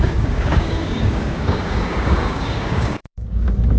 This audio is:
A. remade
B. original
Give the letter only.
A